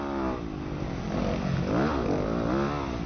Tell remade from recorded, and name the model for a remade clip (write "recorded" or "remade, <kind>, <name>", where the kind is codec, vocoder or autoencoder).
recorded